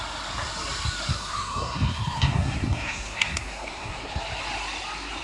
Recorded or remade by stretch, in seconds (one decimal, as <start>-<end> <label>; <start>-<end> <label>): 0.0-1.1 recorded; 1.1-4.2 remade; 4.2-5.2 recorded

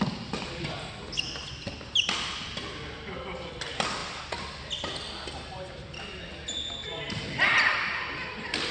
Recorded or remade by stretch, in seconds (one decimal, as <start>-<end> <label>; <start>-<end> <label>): 0.0-8.7 recorded